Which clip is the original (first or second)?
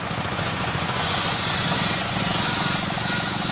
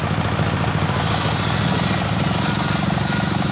second